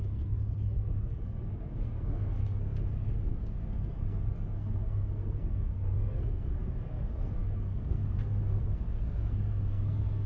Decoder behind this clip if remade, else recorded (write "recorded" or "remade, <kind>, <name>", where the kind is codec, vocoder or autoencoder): remade, codec, SNAC